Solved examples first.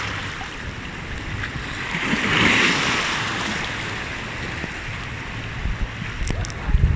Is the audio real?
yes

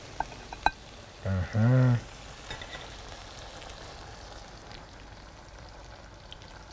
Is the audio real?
yes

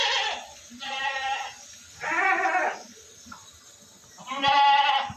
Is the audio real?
yes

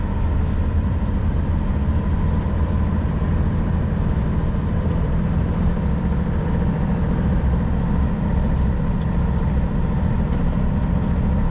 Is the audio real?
no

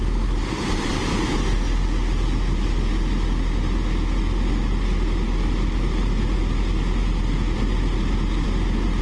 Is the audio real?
yes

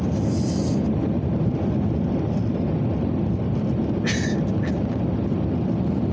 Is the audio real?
yes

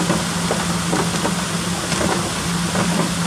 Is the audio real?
yes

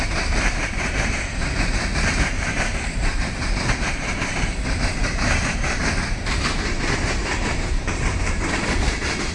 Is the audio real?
no